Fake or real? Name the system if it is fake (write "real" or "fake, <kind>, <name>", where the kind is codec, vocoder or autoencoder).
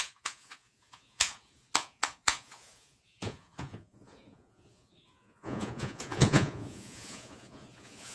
fake, vocoder, Vocos